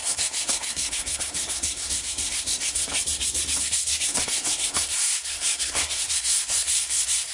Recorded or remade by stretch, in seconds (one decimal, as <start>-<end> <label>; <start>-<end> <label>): 0.0-2.9 remade; 2.9-3.6 recorded; 3.6-7.3 remade